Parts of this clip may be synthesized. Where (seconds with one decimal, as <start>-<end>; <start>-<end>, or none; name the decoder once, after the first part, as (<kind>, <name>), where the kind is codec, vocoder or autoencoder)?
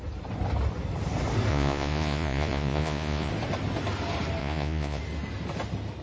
1.5-3.3 (vocoder, Vocos); 4.4-5.0